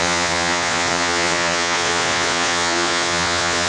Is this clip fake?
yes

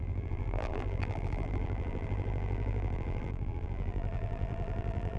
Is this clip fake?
yes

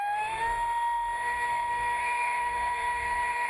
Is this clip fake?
yes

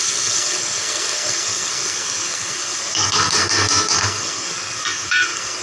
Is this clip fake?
yes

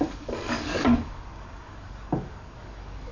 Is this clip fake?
yes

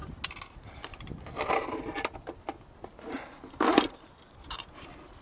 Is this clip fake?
no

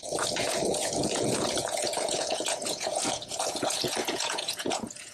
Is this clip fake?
yes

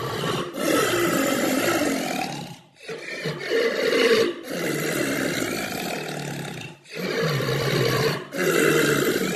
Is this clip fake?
no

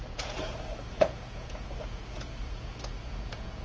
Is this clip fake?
yes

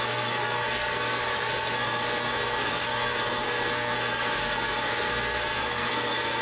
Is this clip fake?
yes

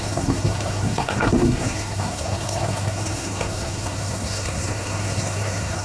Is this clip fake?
yes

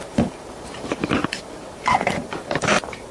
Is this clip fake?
yes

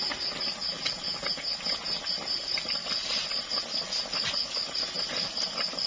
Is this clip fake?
no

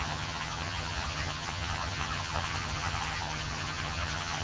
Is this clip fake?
yes